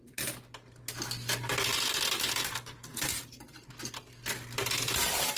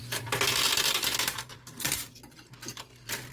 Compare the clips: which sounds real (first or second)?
first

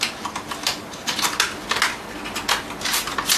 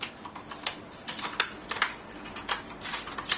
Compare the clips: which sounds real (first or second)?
first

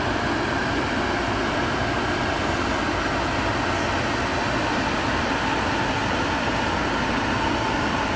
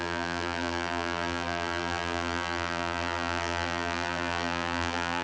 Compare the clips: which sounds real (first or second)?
first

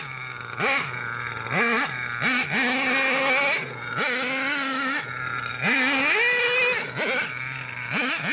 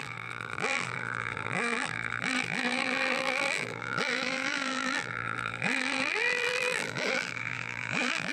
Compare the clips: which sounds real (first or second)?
first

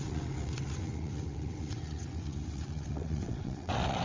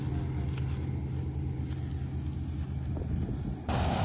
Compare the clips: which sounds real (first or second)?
second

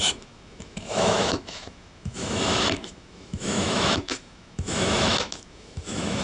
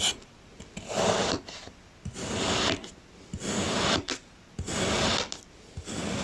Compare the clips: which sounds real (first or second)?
second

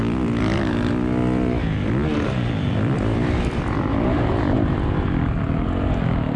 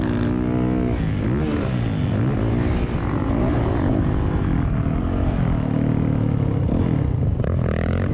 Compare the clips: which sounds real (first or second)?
second